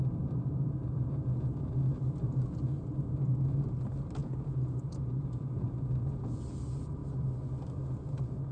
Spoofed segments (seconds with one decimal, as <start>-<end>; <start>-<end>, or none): 0.9-1.7; 4.2-6.4